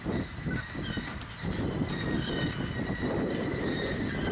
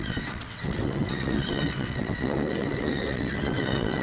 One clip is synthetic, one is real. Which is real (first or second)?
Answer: first